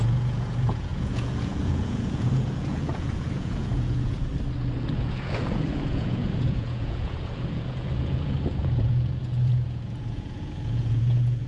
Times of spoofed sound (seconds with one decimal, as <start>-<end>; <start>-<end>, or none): 0.0-4.3; 4.9-11.5